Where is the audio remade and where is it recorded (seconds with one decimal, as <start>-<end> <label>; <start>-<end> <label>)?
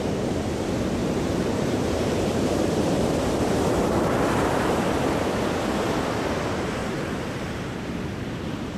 0.0-1.0 recorded; 1.0-4.8 remade; 4.8-6.8 recorded; 6.8-7.8 remade; 7.8-8.8 recorded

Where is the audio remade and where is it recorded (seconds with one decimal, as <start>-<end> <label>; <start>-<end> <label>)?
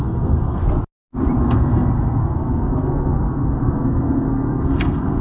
0.0-0.6 remade; 0.6-1.4 recorded; 1.4-5.2 remade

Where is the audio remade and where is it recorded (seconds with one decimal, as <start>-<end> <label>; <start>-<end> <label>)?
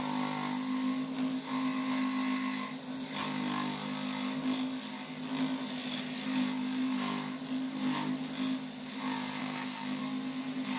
0.0-9.4 recorded; 9.4-10.0 remade; 10.0-10.8 recorded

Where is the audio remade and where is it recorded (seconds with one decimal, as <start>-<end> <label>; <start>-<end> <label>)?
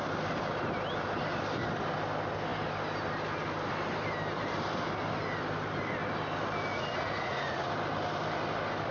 0.0-6.7 recorded; 6.7-7.7 remade; 7.7-8.9 recorded